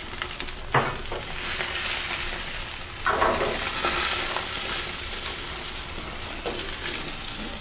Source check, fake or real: real